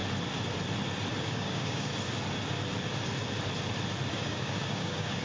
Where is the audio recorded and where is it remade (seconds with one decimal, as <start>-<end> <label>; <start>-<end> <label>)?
0.0-1.2 recorded; 1.2-1.9 remade; 1.9-4.1 recorded; 4.1-5.2 remade